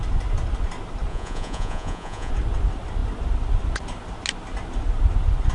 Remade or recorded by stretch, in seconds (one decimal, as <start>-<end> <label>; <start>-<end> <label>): 0.0-1.1 recorded; 1.1-2.3 remade; 2.3-5.5 recorded